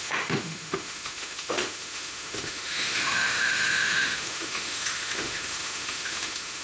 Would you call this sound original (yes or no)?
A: no